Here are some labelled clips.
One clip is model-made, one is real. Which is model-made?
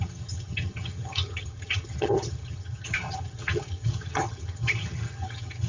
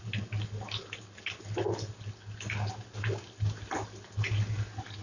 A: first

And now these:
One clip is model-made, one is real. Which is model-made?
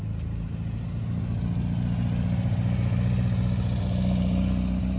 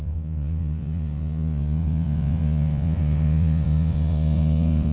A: second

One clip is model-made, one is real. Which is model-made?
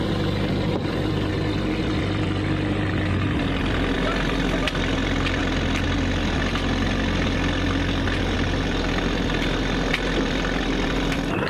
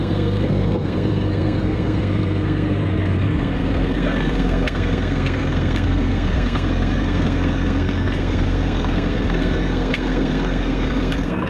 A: second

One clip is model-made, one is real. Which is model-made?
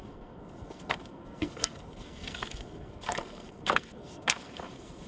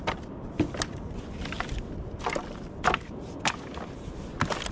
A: first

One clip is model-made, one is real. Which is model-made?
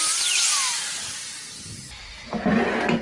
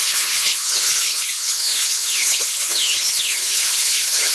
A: second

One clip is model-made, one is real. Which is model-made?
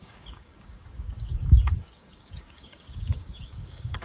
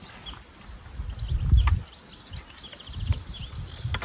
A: first